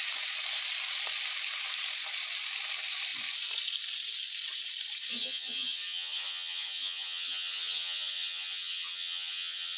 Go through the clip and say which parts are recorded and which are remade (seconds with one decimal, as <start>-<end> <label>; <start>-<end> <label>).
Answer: 0.0-5.1 recorded; 5.1-9.8 remade